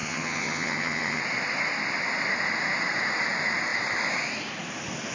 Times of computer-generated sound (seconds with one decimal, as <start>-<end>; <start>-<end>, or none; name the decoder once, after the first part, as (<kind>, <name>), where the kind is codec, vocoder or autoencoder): 0.0-1.2 (vocoder, HiFi-GAN)